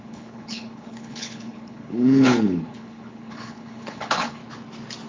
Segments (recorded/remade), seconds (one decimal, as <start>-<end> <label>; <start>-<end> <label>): 0.0-4.4 remade; 4.4-5.1 recorded